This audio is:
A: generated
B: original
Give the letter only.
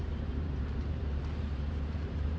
A